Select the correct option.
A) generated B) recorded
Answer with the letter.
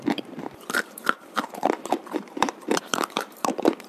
A